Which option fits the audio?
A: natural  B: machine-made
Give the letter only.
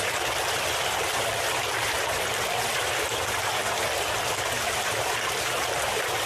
A